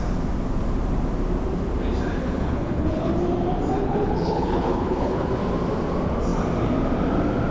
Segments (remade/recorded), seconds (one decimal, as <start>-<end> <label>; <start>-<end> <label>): 0.0-2.2 recorded; 2.2-3.1 remade; 3.1-3.8 recorded; 3.8-5.3 remade; 5.3-7.5 recorded